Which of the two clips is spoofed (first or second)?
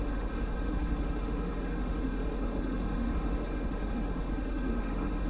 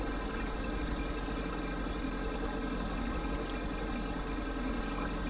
first